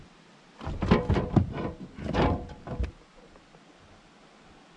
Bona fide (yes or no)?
yes